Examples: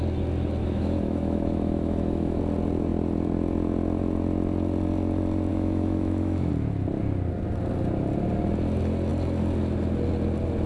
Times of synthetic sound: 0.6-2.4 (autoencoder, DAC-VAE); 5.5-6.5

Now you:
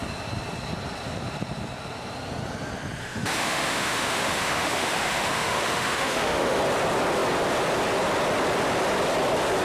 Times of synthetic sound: 3.0-6.6 (autoencoder, DAC-VAE)